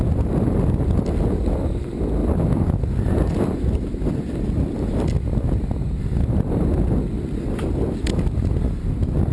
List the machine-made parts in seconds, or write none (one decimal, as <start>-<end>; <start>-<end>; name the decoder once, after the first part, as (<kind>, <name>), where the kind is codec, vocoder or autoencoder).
none

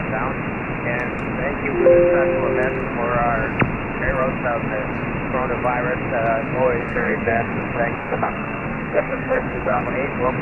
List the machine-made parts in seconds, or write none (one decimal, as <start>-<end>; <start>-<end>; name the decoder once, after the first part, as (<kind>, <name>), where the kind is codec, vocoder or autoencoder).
6.8-7.5 (codec, SNAC); 8.0-9.8

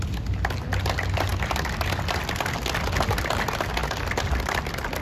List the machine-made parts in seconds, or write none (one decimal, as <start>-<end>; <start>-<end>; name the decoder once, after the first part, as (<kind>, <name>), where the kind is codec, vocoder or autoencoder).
none

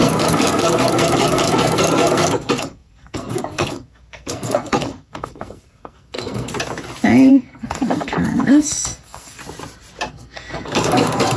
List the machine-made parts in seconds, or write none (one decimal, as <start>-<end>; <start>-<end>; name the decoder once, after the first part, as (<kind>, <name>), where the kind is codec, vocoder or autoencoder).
0.0-6.5 (codec, SNAC); 7.3-9.4; 10.1-11.4

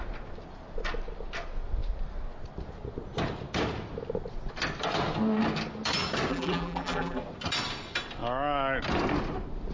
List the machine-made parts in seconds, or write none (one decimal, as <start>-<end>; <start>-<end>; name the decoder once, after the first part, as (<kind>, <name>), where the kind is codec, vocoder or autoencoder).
6.3-7.2 (vocoder, BigVGAN v2)

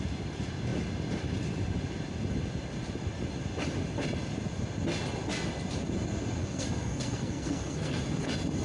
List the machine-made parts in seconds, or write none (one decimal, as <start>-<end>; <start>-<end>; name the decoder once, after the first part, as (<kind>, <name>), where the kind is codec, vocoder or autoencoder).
6.4-8.0 (codec, SNAC)

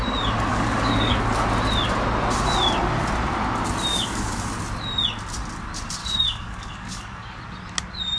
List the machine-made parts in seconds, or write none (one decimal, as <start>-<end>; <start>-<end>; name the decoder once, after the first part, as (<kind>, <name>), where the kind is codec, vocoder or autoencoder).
0.5-1.2 (codec, DAC); 3.9-4.6; 6.0-7.4

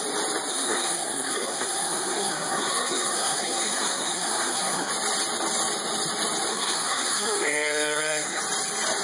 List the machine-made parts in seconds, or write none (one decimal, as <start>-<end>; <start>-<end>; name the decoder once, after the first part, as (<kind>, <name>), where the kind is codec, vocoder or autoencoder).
0.5-4.9 (codec, SNAC); 6.5-8.4